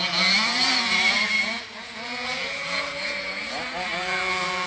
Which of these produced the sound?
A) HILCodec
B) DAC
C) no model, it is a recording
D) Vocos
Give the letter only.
D